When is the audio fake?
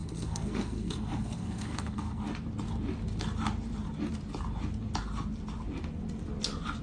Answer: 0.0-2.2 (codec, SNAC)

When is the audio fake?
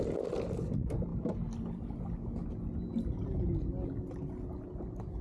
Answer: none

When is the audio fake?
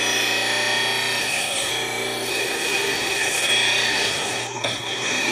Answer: 1.2-1.7 (codec, SNAC); 2.3-3.5; 3.9-5.3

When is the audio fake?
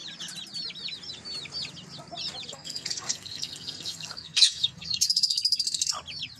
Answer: 2.5-5.9 (codec, SNAC)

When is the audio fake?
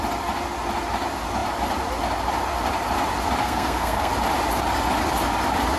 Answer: 3.4-4.1 (codec, SNAC)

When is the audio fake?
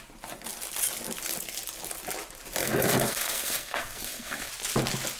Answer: 2.6-4.5 (codec, SNAC)